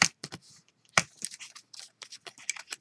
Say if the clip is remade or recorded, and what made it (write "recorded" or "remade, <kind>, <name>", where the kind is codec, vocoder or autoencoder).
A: recorded